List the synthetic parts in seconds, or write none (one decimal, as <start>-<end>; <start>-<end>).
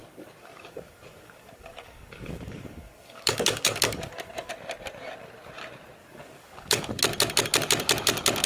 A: 0.0-4.5; 6.0-7.0